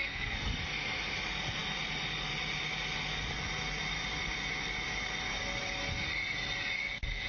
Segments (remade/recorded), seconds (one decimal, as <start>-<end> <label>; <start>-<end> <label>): 0.0-0.6 remade; 0.6-7.3 recorded